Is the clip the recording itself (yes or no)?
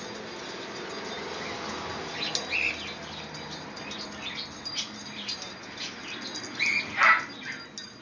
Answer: yes